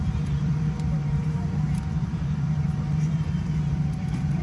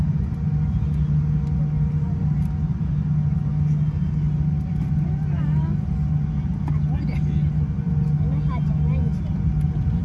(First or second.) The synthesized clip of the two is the first